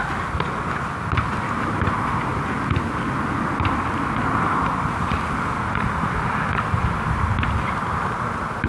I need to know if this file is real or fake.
real